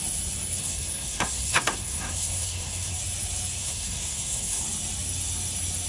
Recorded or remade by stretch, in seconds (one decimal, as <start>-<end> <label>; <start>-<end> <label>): 0.0-0.6 recorded; 0.6-3.0 remade; 3.0-3.6 recorded; 3.6-4.6 remade; 4.6-5.9 recorded